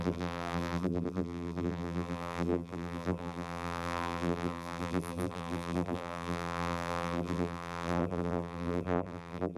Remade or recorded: remade